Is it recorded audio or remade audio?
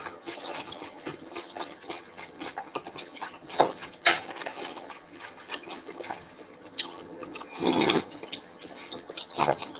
remade